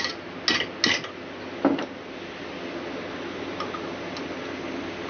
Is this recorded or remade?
recorded